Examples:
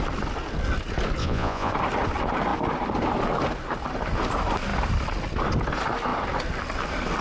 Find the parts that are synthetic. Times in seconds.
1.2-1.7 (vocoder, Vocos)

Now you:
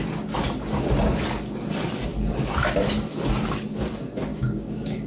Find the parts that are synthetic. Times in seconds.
4.3-5.1 (codec, DAC)

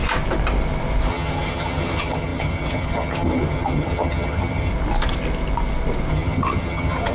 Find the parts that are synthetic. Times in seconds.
1.1-4.7 (vocoder, HiFi-GAN); 6.1-7.1

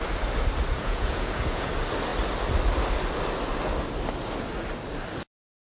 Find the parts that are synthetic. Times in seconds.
0.7-1.7 (vocoder, Vocos)

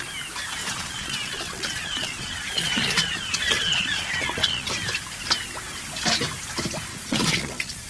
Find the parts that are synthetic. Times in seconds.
0.6-4.7 (vocoder, Vocos); 6.9-7.9